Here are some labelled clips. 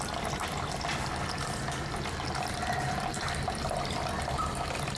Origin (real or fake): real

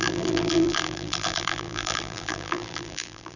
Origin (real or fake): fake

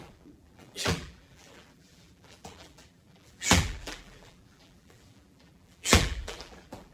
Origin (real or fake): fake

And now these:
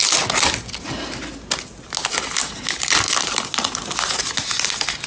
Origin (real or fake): real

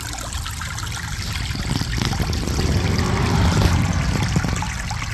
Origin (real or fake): real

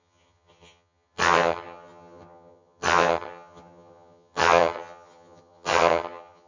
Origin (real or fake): fake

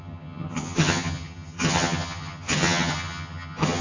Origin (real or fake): fake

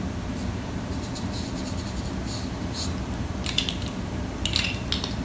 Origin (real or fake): real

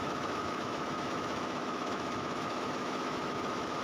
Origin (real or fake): fake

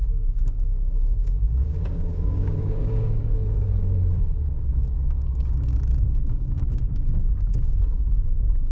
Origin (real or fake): fake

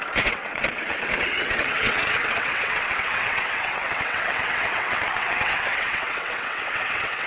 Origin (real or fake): fake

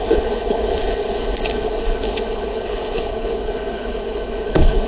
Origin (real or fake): fake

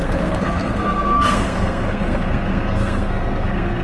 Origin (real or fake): fake